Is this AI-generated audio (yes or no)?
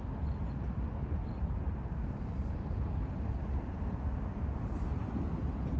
no